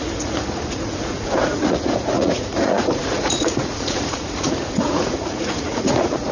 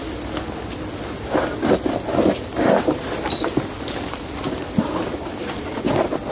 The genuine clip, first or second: second